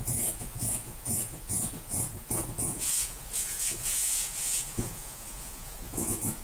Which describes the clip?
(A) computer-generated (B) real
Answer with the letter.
A